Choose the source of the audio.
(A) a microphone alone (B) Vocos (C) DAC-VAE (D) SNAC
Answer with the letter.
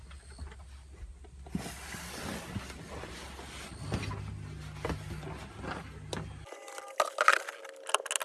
A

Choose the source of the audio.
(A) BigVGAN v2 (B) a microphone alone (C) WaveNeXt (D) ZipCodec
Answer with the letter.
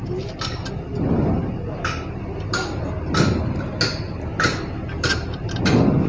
B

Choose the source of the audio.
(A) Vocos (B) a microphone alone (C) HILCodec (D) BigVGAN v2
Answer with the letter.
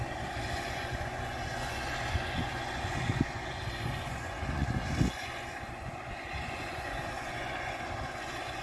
A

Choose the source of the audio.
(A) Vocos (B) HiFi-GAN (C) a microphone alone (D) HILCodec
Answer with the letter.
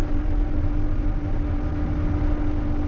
C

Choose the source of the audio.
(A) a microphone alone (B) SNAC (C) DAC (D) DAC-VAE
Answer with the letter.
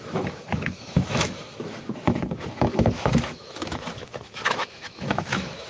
D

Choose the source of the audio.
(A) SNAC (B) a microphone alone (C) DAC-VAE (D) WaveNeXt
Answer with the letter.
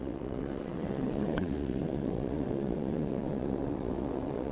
D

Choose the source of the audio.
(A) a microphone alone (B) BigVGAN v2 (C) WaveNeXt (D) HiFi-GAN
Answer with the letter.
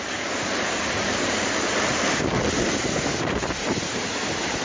B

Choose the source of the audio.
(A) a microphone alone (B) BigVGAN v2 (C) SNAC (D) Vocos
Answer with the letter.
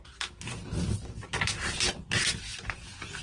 A